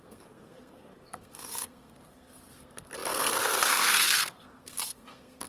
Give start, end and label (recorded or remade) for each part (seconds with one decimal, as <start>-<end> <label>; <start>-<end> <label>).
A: 0.0-5.5 remade